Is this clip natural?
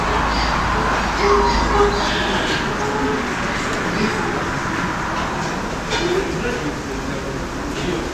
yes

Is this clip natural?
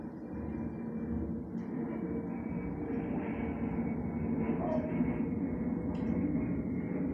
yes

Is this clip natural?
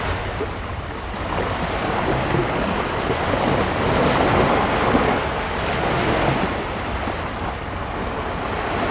yes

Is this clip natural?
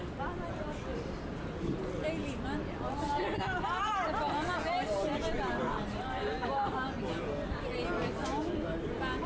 yes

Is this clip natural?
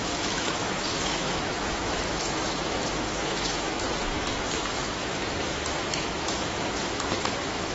no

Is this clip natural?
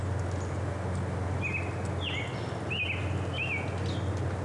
yes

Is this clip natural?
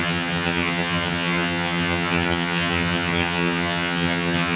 no